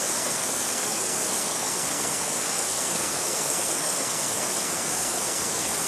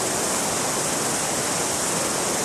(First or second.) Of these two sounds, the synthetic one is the first